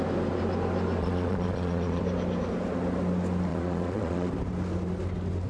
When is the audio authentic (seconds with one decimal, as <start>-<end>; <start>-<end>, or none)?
0.0-1.0; 2.0-3.5; 4.3-5.5